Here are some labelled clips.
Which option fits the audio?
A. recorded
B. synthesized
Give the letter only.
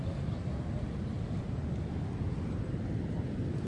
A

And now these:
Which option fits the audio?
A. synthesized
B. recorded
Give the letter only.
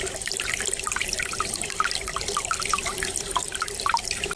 B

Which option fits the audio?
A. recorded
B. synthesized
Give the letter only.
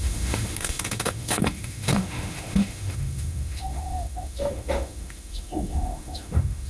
B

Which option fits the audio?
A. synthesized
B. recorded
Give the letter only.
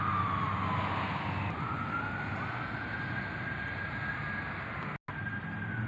B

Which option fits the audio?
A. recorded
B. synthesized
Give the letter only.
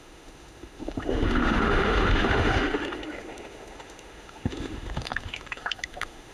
B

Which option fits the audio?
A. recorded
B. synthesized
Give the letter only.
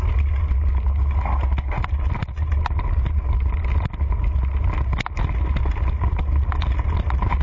A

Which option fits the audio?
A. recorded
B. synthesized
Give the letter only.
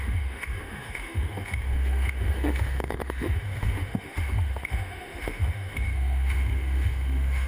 B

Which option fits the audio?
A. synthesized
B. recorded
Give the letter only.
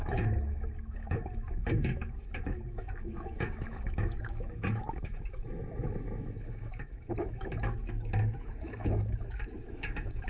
A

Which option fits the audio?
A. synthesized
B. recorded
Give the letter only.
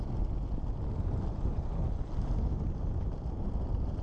B